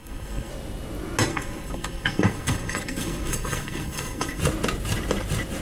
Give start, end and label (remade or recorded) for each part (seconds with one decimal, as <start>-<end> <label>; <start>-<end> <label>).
0.0-0.5 remade; 0.5-1.3 recorded; 1.3-4.4 remade; 4.4-5.6 recorded

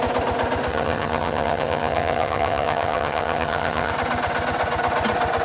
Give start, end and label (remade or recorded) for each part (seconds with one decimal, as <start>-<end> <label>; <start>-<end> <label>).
0.0-0.7 recorded; 0.7-3.9 remade; 3.9-5.4 recorded

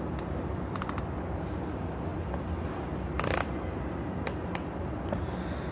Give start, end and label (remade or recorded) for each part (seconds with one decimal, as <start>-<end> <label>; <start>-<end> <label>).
0.0-5.7 recorded

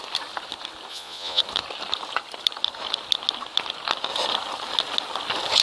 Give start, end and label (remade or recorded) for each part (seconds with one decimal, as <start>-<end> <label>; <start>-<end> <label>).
0.0-0.9 recorded; 0.9-1.4 remade; 1.4-5.6 recorded

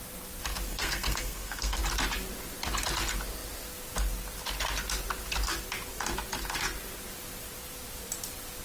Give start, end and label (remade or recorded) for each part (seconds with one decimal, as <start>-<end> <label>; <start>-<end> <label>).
0.0-0.7 recorded; 0.7-1.8 remade; 1.8-8.6 recorded

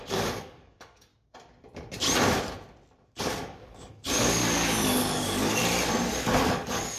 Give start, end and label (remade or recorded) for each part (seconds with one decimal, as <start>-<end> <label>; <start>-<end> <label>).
0.0-1.1 remade; 1.1-3.2 recorded; 3.2-5.6 remade; 5.6-6.1 recorded; 6.1-7.0 remade

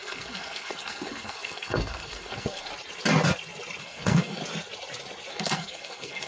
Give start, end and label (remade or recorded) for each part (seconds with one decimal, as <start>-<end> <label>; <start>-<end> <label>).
0.0-2.7 remade; 2.7-3.8 recorded; 3.8-4.4 remade; 4.4-5.3 recorded; 5.3-6.3 remade